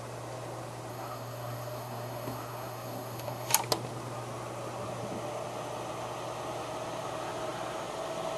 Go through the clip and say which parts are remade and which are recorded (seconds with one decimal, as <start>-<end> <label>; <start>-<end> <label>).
0.0-0.9 recorded; 0.9-3.5 remade; 3.5-8.4 recorded